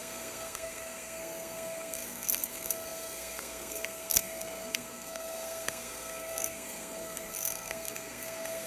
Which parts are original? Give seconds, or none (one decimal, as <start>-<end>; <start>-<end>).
none